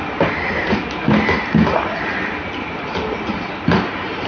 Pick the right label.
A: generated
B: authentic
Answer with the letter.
B